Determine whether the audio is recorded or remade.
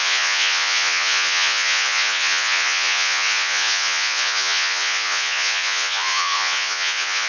remade